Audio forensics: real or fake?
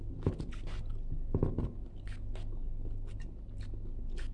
real